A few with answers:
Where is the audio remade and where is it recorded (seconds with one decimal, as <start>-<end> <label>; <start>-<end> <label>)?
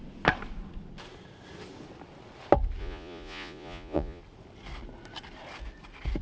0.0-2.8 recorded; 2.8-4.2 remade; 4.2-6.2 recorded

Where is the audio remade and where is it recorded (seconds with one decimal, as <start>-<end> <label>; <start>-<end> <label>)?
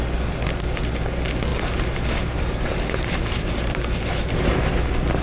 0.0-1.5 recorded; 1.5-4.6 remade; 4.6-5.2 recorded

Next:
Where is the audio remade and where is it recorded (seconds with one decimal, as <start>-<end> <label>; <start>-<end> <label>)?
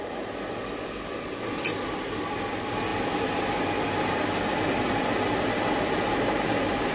0.0-6.9 recorded